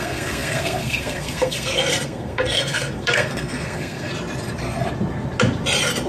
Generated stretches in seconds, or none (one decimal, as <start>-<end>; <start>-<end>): 0.0-4.1